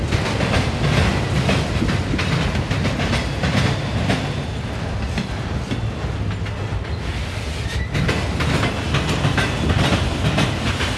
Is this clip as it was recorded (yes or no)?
yes